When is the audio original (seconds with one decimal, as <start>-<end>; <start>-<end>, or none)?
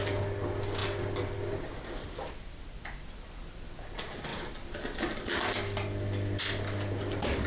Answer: 0.0-7.5